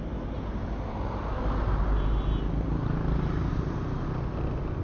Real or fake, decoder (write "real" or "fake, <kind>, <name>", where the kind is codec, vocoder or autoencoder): real